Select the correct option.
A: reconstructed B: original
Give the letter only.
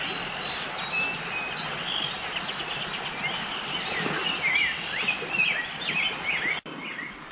B